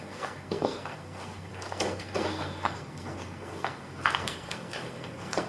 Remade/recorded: remade